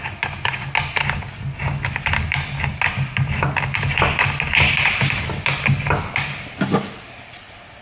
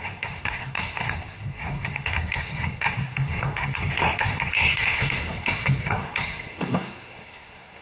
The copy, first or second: second